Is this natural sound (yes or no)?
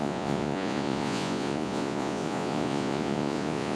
no